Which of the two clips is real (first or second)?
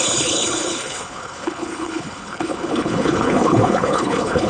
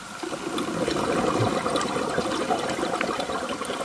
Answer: second